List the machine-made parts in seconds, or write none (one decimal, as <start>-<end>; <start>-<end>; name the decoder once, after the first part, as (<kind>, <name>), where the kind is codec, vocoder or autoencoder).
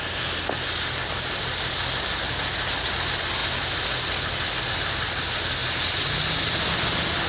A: none